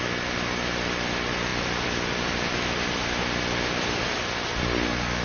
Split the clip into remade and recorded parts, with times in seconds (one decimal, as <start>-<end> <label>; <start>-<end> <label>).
0.0-1.5 recorded; 1.5-4.0 remade; 4.0-5.2 recorded